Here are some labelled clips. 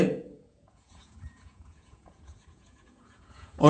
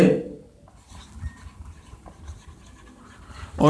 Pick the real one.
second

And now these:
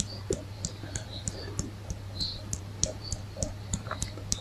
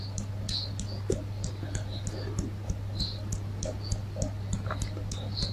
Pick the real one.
second